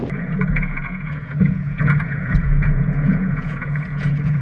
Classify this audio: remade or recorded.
remade